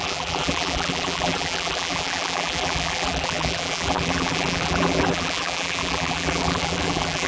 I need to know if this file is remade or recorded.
remade